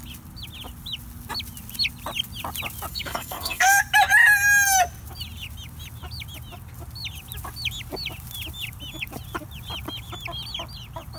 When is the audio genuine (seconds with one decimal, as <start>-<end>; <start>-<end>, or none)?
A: 0.0-2.9; 3.8-11.2